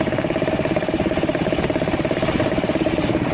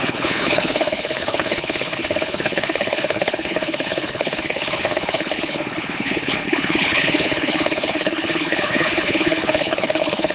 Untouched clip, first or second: first